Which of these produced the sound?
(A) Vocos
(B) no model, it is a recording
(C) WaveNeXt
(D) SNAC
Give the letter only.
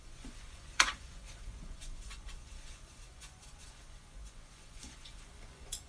A